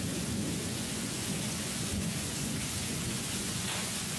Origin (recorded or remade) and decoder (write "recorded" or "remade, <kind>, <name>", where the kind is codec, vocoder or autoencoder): remade, vocoder, Vocos